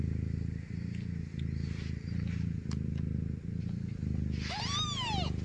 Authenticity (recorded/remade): recorded